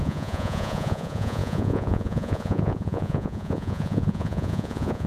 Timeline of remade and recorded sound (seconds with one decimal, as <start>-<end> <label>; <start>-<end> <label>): 0.0-5.1 remade

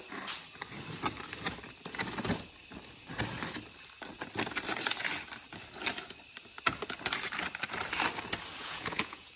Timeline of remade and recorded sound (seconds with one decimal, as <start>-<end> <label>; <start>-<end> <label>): 0.0-8.6 recorded; 8.6-9.4 remade

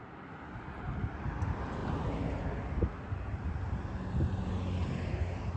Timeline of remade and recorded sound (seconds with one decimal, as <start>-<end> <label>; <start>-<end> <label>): 0.0-5.6 recorded

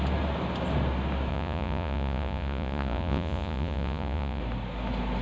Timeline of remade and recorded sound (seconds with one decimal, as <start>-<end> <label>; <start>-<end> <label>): 0.0-1.3 recorded; 1.3-4.4 remade; 4.4-5.2 recorded